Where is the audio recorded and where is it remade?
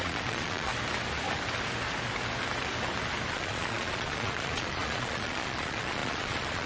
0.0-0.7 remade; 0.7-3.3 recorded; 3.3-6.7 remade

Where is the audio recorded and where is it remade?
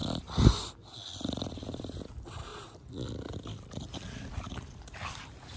0.0-5.6 recorded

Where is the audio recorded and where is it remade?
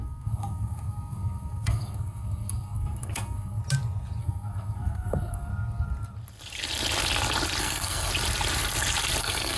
0.0-3.6 remade; 3.6-4.2 recorded; 4.2-5.5 remade; 5.5-7.6 recorded; 7.6-8.1 remade; 8.1-9.2 recorded; 9.2-9.6 remade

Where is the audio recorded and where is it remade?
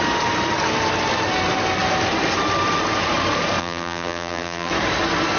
0.0-3.6 recorded; 3.6-4.7 remade; 4.7-5.4 recorded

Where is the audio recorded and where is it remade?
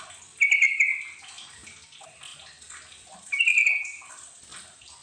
0.0-5.0 recorded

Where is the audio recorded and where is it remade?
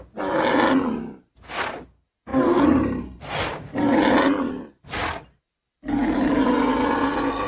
0.0-7.5 recorded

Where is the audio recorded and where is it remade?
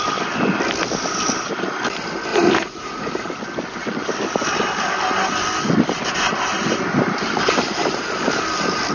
0.0-2.3 recorded; 2.3-3.1 remade; 3.1-8.9 recorded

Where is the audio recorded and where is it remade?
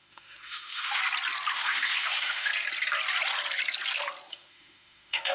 0.0-1.0 remade; 1.0-1.5 recorded; 1.5-2.5 remade; 2.5-4.3 recorded; 4.3-5.3 remade